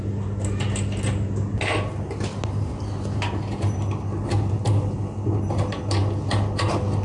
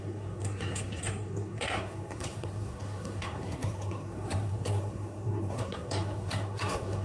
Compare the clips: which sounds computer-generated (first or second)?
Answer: second